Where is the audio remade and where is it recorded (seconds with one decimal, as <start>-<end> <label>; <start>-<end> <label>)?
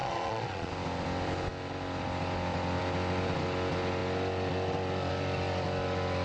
0.0-0.7 remade; 0.7-6.2 recorded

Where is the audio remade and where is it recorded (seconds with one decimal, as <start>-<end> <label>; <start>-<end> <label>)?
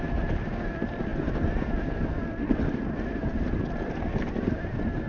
0.0-5.1 recorded